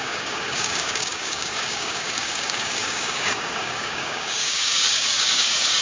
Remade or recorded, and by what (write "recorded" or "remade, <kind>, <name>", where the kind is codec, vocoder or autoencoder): remade, codec, DAC